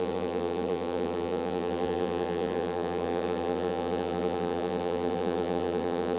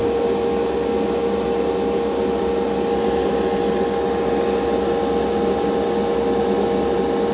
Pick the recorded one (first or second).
second